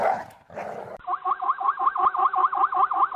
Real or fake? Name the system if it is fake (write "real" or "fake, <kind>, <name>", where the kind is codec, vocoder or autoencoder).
fake, vocoder, BigVGAN v2